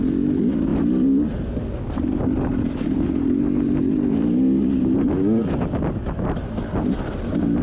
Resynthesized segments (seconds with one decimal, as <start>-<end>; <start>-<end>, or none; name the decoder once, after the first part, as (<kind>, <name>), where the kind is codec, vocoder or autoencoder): none